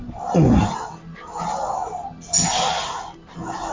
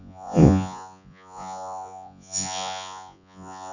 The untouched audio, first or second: first